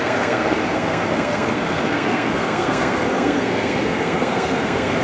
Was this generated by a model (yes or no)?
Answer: yes